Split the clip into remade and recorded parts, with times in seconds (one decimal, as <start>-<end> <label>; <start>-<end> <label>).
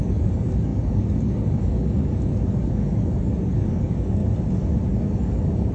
0.0-4.2 remade; 4.2-4.9 recorded; 4.9-5.7 remade